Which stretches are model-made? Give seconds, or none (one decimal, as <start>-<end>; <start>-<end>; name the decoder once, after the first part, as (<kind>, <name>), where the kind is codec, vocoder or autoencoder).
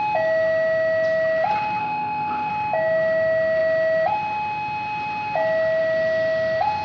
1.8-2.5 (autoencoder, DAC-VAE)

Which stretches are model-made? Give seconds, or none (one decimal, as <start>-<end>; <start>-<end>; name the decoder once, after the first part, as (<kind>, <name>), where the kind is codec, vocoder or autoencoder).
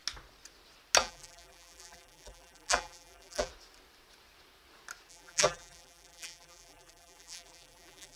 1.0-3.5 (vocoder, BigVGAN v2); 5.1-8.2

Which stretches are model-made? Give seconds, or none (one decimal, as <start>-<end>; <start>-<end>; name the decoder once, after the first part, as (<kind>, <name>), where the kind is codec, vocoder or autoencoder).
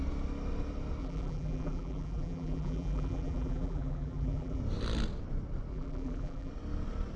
1.0-4.6 (vocoder, BigVGAN v2); 5.7-6.5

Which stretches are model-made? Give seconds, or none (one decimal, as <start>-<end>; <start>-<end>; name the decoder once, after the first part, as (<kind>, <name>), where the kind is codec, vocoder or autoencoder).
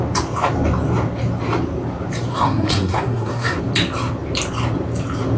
2.3-3.6 (codec, SNAC)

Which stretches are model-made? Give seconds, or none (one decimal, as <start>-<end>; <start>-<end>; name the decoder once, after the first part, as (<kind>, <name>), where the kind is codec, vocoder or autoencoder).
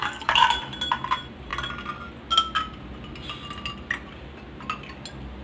0.0-0.6 (codec, DAC)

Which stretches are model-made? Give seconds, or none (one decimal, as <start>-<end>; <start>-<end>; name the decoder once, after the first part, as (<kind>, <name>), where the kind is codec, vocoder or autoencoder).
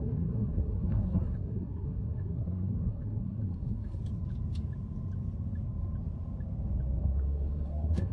0.0-4.0 (codec, SNAC); 7.0-8.1